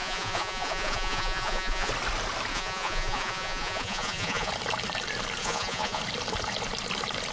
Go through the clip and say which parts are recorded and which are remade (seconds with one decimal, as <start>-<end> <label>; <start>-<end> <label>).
0.0-1.9 remade; 1.9-2.5 recorded; 2.5-4.5 remade; 4.5-5.4 recorded; 5.4-6.0 remade; 6.0-7.3 recorded